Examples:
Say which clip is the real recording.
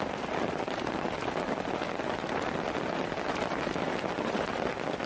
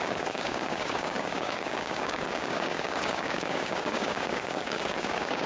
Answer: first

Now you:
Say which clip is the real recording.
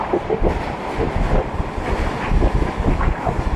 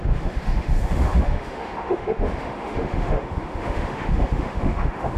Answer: first